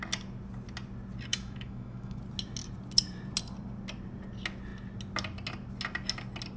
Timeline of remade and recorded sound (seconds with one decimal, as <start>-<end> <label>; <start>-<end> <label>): 0.0-1.3 recorded; 1.3-2.2 remade; 2.2-6.6 recorded